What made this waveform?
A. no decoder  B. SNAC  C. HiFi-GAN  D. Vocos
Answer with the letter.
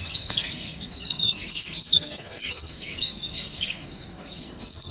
B